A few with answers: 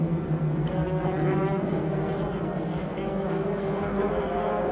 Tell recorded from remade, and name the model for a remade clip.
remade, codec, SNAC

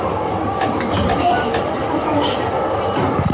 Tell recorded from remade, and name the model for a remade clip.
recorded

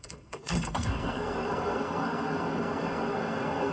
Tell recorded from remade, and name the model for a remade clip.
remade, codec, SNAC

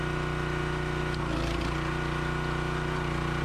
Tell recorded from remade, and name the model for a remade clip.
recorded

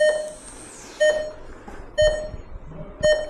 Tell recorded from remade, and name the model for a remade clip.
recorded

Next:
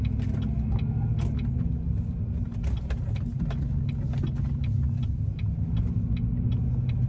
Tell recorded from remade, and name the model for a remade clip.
recorded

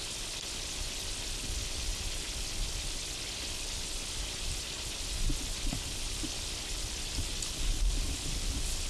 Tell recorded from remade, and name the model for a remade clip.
recorded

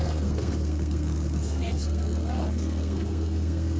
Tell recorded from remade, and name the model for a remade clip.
remade, codec, SNAC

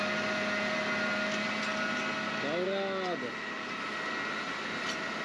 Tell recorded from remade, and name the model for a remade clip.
recorded